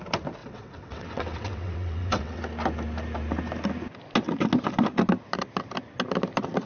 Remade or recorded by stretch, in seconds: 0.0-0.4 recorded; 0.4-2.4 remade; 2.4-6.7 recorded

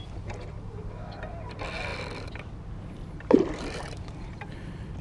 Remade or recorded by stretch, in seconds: 0.0-1.9 recorded; 1.9-5.0 remade

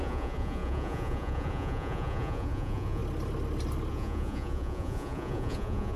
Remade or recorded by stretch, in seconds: 0.0-3.0 remade; 3.0-3.9 recorded; 3.9-6.0 remade